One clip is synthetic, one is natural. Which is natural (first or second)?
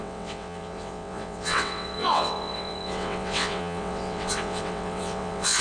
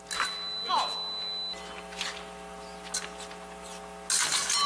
second